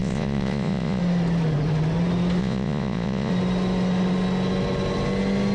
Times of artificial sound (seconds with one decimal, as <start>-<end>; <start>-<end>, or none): 0.0-1.0; 2.4-3.3